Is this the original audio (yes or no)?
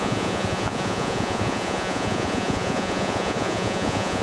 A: no